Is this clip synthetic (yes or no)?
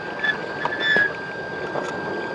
no